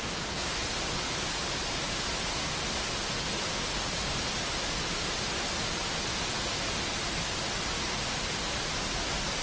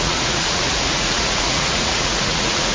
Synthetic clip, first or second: second